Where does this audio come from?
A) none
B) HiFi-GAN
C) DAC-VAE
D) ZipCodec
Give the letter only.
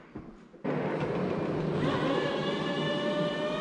A